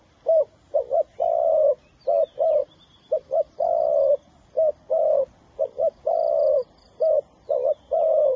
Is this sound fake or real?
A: real